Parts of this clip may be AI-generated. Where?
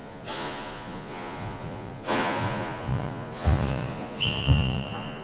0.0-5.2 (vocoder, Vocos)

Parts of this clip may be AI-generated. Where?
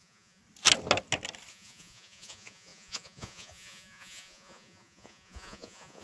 0.0-0.4 (vocoder, Vocos); 1.5-6.0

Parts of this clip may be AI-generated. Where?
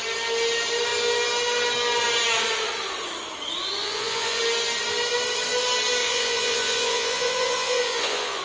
3.8-4.4 (vocoder, Vocos); 6.0-8.4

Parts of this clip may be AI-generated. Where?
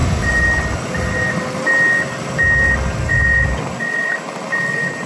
none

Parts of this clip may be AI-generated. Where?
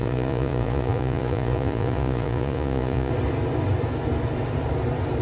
0.0-3.1 (vocoder, Vocos)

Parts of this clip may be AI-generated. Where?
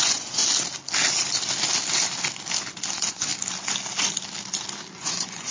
0.0-0.4 (vocoder, Vocos); 2.9-3.3; 4.9-5.5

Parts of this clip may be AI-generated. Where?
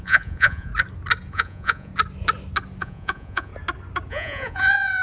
0.0-0.7 (vocoder, Vocos); 1.3-1.9; 2.8-3.5; 4.1-5.0